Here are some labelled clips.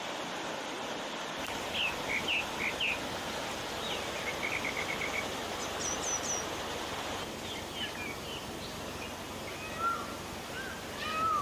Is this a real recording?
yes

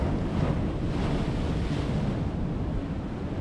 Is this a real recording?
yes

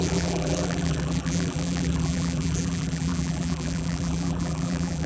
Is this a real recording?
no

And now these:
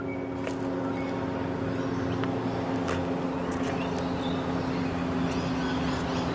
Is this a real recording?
yes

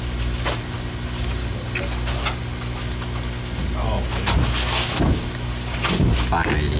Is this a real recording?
yes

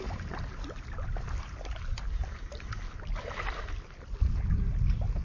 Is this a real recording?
yes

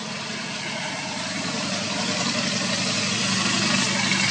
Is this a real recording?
yes